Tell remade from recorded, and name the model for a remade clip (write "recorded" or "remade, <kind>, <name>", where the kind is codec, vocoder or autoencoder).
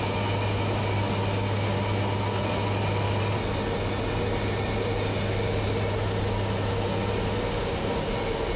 recorded